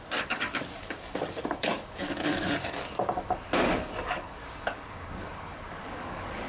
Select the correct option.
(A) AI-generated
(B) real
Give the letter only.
A